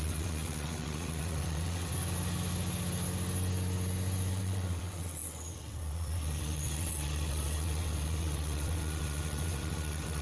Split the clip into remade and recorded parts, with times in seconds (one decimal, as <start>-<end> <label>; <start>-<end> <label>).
0.0-1.9 remade; 1.9-4.3 recorded; 4.3-10.2 remade